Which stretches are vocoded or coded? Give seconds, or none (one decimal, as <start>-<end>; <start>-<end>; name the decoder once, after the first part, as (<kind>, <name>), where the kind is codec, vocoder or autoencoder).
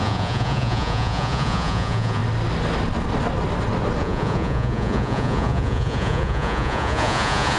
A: 0.0-2.2 (vocoder, Vocos); 4.0-7.6